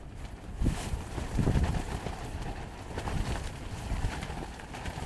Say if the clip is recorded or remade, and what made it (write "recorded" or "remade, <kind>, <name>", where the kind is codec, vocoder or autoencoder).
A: recorded